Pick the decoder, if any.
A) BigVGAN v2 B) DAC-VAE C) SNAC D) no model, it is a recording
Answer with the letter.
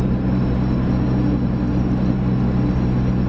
D